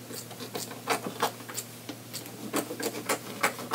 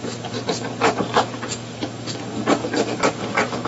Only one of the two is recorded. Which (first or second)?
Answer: first